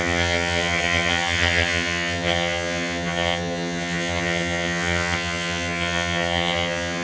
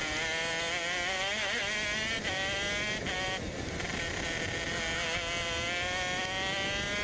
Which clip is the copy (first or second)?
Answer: first